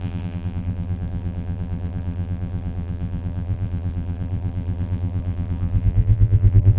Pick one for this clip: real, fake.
fake